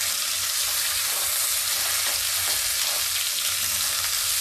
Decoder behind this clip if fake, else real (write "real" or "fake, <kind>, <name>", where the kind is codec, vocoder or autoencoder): real